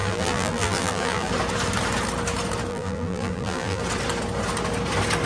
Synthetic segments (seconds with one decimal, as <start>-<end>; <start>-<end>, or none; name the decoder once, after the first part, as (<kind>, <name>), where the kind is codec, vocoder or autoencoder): 0.0-1.3 (vocoder, BigVGAN v2); 2.7-3.8